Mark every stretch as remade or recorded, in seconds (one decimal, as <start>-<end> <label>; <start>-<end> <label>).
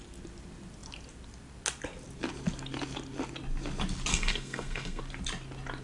0.0-4.1 recorded; 4.1-5.0 remade; 5.0-5.8 recorded